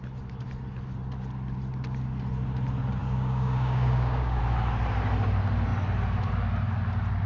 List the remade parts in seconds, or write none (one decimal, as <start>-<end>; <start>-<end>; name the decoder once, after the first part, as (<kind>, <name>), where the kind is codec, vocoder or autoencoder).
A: 3.0-4.4 (codec, DAC)